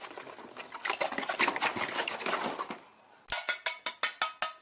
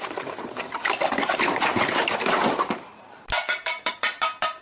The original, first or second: first